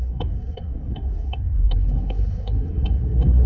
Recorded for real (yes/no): no